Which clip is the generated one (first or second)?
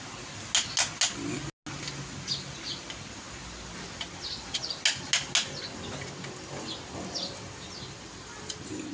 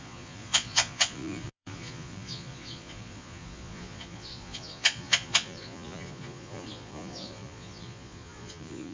second